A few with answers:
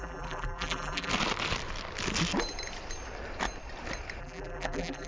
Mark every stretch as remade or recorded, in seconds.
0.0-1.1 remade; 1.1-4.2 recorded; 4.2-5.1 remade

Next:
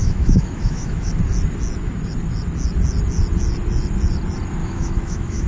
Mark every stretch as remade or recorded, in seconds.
0.0-1.1 remade; 1.1-4.6 recorded; 4.6-5.5 remade

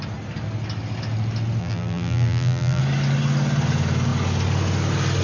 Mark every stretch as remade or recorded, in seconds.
0.0-1.6 recorded; 1.6-2.8 remade; 2.8-5.2 recorded

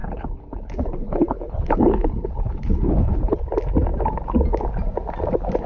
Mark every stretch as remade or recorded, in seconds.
0.0-3.4 remade; 3.4-5.7 recorded

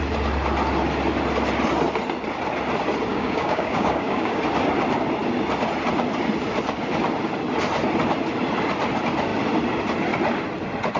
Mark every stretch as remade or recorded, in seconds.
0.0-3.1 recorded; 3.1-4.4 remade; 4.4-11.0 recorded

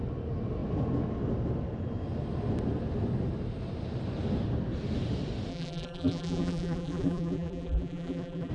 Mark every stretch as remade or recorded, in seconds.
0.0-5.5 recorded; 5.5-8.5 remade